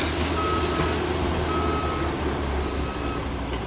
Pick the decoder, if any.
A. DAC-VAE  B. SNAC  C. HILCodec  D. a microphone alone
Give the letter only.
D